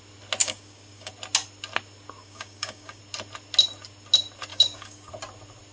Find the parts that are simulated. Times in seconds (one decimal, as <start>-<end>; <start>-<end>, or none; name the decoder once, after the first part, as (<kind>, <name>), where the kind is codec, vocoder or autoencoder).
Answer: 0.4-1.1 (codec, DAC); 2.2-3.0; 4.5-5.1

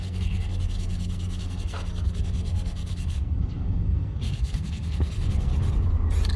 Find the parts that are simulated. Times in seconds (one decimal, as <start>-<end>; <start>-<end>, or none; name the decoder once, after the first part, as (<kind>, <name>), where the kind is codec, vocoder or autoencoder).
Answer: 0.0-5.5 (codec, SNAC)

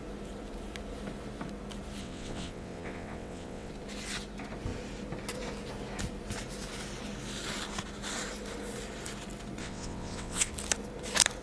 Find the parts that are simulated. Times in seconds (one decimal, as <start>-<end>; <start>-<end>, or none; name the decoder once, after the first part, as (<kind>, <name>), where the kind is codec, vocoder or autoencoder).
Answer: 2.0-3.7 (vocoder, WaveNeXt); 9.6-10.5

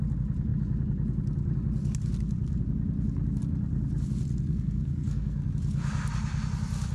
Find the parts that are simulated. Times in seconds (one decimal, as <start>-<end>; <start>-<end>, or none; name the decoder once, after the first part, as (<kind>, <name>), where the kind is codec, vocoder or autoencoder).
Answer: 4.5-5.5 (codec, SNAC)

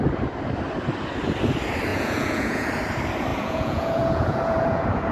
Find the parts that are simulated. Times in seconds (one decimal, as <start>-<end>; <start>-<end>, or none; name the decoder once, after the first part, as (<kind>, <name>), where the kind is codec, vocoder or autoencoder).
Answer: 1.9-2.7 (vocoder, Vocos); 3.3-5.1